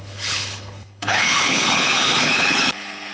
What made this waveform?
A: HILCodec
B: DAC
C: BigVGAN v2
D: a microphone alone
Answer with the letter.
A